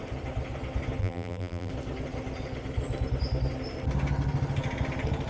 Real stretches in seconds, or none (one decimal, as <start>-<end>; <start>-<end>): 0.0-1.0; 1.7-5.3

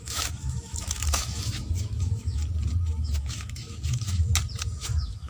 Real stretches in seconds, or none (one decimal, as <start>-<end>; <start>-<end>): 2.4-2.9; 4.3-4.8

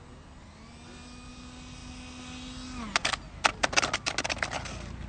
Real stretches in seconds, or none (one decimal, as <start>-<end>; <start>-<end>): 0.0-5.1

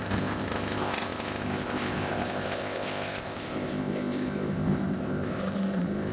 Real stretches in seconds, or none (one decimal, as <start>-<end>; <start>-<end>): none

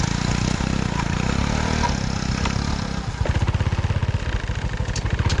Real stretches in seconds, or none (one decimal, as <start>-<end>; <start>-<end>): 0.0-5.4

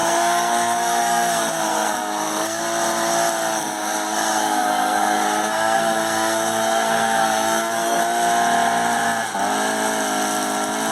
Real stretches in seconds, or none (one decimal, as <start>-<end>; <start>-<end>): 2.6-3.5; 8.0-10.9